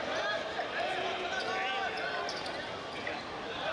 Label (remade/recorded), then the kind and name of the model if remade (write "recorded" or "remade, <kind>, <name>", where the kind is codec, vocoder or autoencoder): recorded